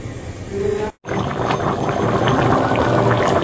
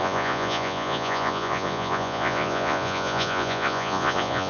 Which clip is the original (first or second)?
first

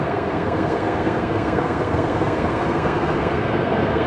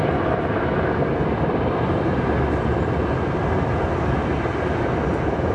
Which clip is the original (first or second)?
second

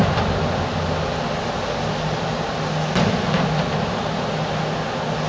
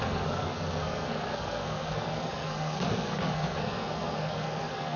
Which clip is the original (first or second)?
first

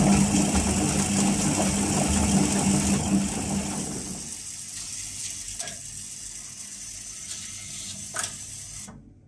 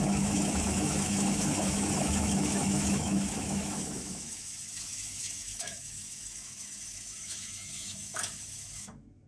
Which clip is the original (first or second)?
first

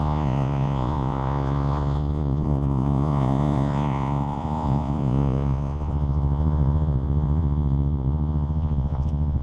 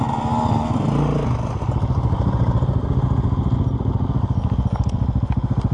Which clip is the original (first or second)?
second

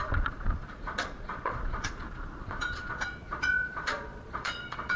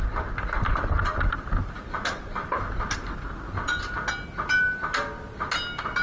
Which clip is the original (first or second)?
second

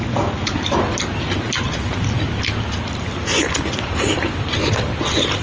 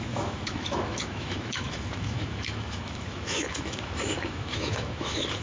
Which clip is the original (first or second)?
first